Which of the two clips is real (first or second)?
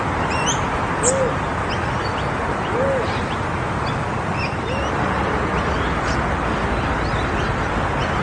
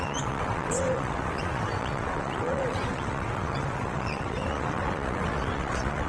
first